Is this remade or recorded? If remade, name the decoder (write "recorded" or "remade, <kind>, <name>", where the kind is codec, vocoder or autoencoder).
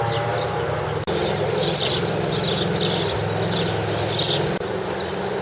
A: recorded